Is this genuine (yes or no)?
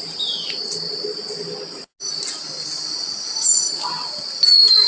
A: yes